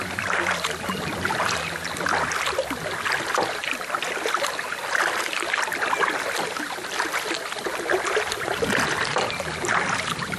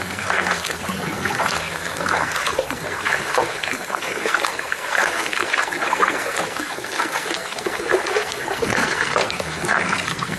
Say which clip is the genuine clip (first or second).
first